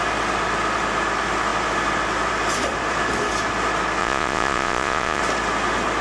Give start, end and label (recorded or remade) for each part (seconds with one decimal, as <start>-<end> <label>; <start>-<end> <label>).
0.0-4.0 recorded; 4.0-5.2 remade; 5.2-6.0 recorded